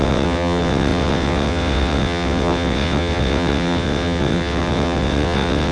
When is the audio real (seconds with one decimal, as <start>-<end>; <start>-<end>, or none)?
none